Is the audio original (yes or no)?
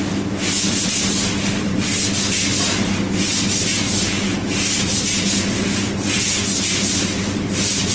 yes